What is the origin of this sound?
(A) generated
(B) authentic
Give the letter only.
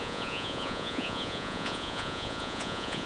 A